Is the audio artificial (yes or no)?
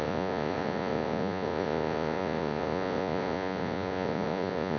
yes